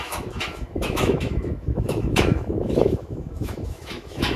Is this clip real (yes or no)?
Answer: no